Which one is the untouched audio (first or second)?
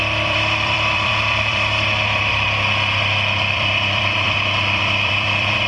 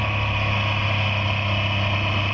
second